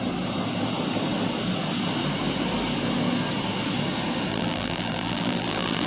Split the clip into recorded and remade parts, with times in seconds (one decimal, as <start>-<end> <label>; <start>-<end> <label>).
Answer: 0.0-4.3 recorded; 4.3-5.9 remade